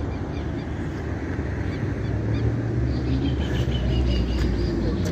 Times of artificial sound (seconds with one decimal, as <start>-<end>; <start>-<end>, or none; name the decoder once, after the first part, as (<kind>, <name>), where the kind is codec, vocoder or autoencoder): 3.2-3.9 (vocoder, BigVGAN v2)